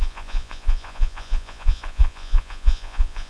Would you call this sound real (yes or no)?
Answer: no